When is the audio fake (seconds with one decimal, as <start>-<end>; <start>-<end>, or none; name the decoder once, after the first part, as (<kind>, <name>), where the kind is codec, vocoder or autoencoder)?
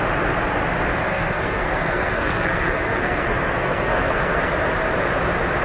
1.1-4.5 (codec, SNAC)